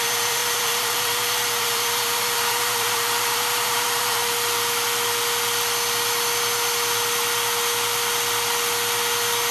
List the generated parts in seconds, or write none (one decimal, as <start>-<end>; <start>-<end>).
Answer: 0.0-4.2